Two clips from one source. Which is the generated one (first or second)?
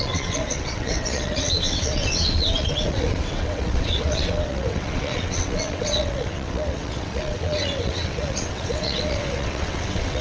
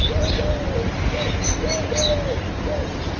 first